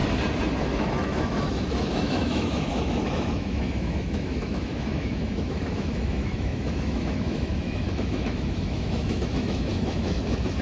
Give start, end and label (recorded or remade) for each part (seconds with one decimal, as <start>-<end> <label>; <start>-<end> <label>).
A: 0.0-0.6 recorded; 0.6-10.6 remade